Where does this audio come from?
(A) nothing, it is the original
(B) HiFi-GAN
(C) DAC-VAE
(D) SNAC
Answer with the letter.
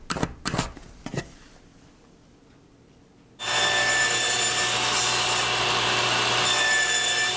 A